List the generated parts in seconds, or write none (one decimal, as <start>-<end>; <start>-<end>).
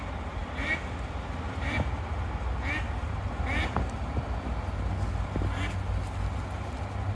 none